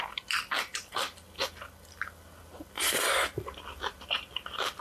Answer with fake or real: real